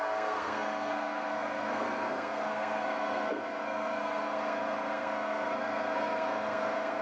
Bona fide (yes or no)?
no